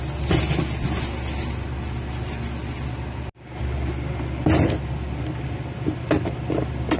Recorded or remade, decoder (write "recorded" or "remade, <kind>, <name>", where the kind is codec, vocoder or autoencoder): recorded